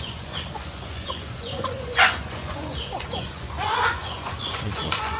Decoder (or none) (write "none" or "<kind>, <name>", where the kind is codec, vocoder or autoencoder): vocoder, Vocos